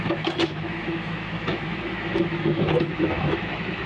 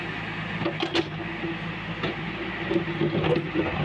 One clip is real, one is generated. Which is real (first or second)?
second